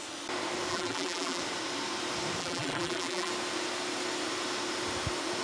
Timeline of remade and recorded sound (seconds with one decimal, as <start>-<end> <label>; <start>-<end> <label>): 0.0-0.7 recorded; 0.7-1.4 remade; 1.4-2.4 recorded; 2.4-3.3 remade; 3.3-5.4 recorded